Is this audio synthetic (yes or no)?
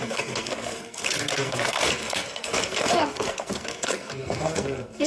yes